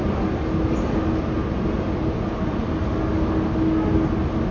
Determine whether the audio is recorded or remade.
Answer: recorded